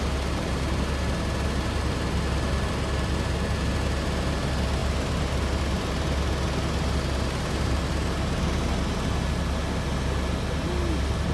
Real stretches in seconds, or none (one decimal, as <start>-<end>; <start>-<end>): 0.0-11.3